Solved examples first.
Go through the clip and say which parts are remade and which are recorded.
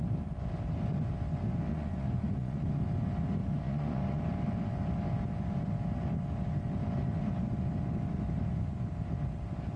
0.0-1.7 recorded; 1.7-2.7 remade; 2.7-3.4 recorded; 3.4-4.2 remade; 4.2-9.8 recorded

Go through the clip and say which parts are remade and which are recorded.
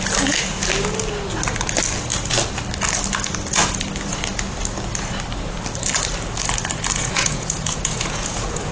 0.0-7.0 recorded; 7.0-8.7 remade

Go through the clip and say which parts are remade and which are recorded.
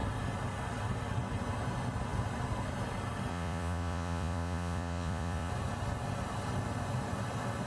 0.0-3.3 recorded; 3.3-5.5 remade; 5.5-7.7 recorded